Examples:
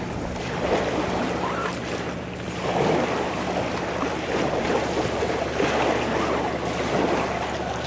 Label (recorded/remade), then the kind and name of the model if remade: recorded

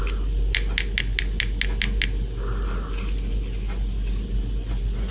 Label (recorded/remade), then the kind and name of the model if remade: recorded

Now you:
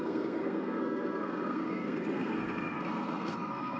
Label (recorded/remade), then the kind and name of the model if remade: remade, codec, SNAC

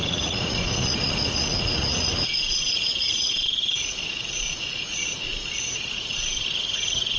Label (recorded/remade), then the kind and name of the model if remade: remade, vocoder, Vocos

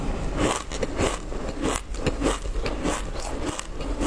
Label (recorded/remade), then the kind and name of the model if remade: recorded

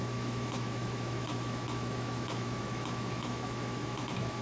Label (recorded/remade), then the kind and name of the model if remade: remade, autoencoder, DAC-VAE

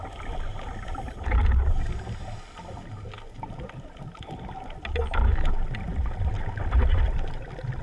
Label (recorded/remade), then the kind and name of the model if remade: recorded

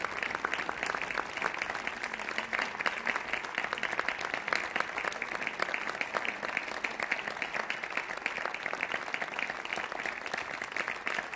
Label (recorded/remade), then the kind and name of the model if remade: recorded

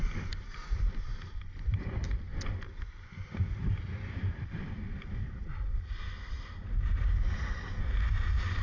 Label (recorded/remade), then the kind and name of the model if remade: recorded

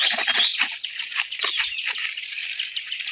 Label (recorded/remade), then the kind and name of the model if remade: recorded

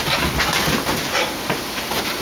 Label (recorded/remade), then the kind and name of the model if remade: recorded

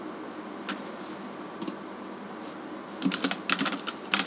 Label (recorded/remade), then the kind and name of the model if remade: recorded